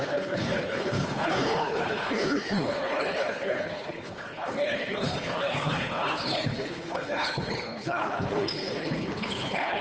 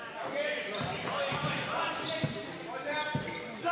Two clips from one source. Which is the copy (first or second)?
first